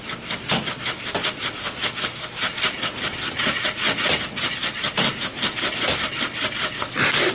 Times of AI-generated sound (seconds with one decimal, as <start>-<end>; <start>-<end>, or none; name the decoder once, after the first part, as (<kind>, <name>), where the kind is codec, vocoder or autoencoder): none